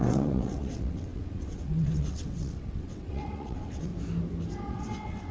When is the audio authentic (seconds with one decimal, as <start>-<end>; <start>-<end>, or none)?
3.9-4.7